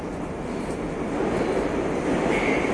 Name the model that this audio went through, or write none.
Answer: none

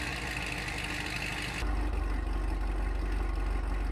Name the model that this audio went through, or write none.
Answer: none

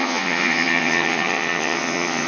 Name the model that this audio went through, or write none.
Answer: vocoder, HiFi-GAN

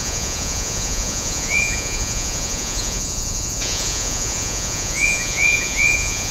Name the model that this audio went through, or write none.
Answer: vocoder, Vocos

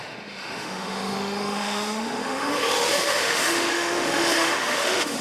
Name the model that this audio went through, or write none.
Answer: autoencoder, DAC-VAE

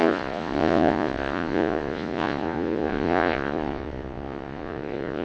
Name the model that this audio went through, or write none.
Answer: vocoder, Vocos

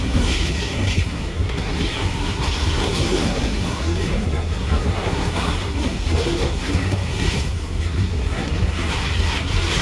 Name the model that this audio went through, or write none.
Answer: codec, SNAC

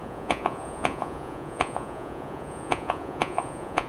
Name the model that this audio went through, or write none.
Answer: vocoder, Vocos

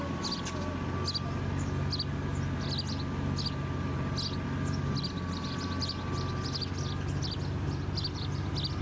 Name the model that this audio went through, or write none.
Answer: none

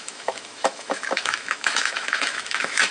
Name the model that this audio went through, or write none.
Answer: autoencoder, DAC-VAE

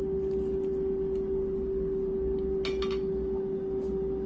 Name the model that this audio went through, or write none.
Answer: none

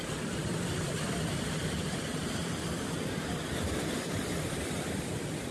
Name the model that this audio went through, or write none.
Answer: vocoder, BigVGAN v2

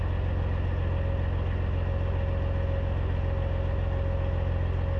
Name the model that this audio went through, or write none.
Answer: none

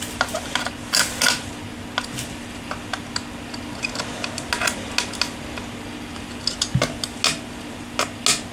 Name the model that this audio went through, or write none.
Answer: none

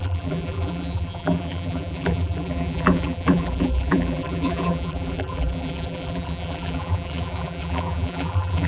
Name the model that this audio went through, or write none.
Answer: vocoder, BigVGAN v2